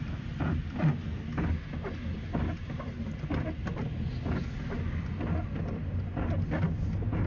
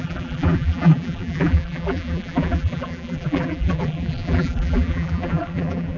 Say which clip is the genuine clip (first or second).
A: first